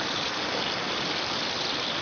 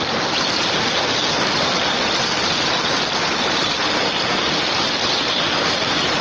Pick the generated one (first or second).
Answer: first